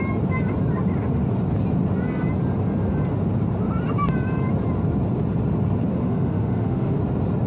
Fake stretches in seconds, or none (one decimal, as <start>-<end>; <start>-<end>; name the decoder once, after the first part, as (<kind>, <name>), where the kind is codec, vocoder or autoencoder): 5.9-7.0 (autoencoder, DAC-VAE)